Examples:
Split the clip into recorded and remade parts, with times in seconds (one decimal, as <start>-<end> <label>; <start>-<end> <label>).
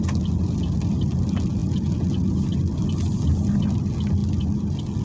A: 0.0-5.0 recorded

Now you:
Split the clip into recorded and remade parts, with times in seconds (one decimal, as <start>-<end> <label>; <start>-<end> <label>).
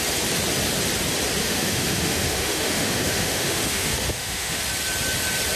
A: 0.0-1.4 recorded; 1.4-4.6 remade; 4.6-5.6 recorded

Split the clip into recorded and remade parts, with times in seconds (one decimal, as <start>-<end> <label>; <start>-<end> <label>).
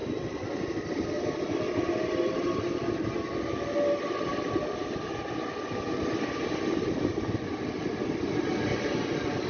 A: 0.0-9.5 recorded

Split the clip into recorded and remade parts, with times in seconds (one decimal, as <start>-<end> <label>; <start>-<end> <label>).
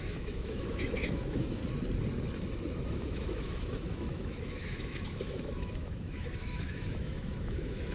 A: 0.0-1.6 remade; 1.6-2.9 recorded; 2.9-7.9 remade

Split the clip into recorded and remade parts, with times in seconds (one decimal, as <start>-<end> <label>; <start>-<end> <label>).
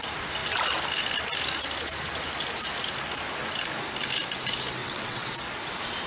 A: 0.0-4.8 recorded; 4.8-5.3 remade; 5.3-6.1 recorded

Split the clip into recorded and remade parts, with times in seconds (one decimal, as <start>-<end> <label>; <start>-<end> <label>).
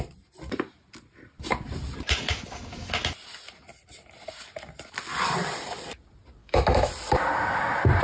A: 0.0-6.4 recorded; 6.4-6.9 remade; 6.9-8.0 recorded